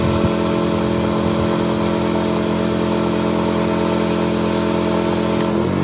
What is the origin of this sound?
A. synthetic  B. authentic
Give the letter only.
B